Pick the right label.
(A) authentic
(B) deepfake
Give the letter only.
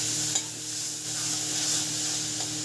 A